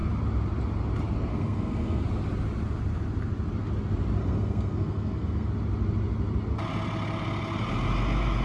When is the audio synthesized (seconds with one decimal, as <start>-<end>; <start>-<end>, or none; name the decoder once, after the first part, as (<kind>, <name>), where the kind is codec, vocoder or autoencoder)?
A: 1.3-2.0 (codec, SNAC); 4.2-5.5